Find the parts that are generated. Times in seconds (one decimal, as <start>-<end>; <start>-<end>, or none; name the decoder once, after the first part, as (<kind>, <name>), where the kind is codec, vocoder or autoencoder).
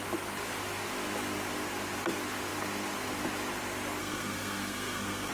4.0-5.3 (codec, SNAC)